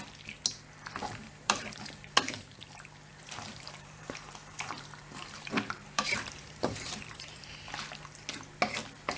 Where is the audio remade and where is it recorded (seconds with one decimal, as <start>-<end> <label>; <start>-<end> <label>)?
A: 0.0-1.0 recorded; 1.0-2.6 remade; 2.6-3.1 recorded; 3.1-7.7 remade; 7.7-9.2 recorded